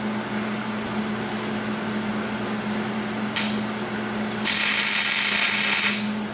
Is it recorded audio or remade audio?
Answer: recorded